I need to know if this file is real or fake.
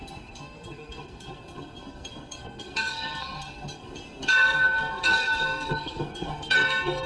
fake